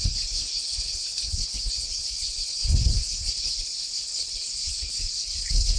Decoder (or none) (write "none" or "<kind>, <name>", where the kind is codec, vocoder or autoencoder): codec, HILCodec